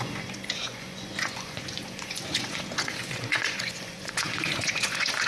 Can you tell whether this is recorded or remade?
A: remade